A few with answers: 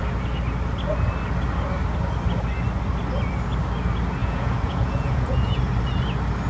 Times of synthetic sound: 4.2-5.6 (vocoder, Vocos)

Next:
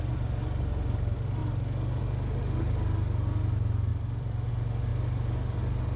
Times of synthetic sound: 3.9-4.5 (vocoder, BigVGAN v2); 4.9-5.6

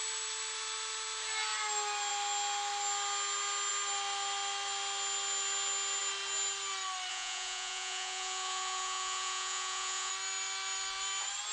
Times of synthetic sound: 7.1-10.1 (vocoder, Vocos)

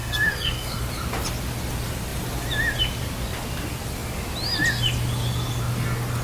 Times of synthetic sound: 0.0-0.8 (codec, SNAC)